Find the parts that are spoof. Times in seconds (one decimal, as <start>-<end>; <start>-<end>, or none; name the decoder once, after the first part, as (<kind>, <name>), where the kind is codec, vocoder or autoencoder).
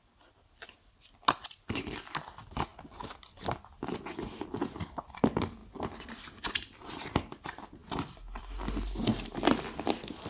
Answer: none